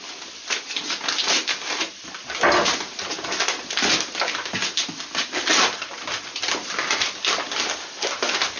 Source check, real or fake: real